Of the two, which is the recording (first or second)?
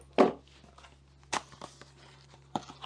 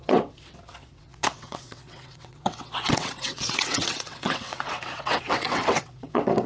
first